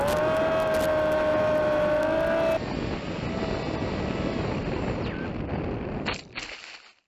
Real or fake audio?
real